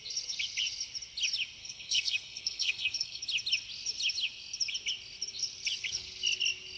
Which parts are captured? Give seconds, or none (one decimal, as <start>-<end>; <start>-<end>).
0.0-1.6; 3.2-6.8